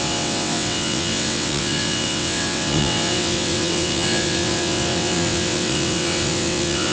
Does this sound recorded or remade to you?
remade